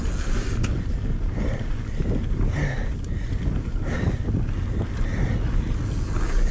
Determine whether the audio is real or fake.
real